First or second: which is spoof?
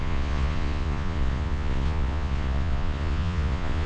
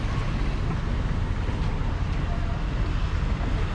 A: first